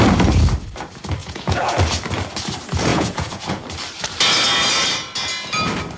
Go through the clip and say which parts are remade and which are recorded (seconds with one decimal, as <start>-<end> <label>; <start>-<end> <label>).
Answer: 0.0-1.2 recorded; 1.2-1.7 remade; 1.7-2.9 recorded; 2.9-3.6 remade; 3.6-6.0 recorded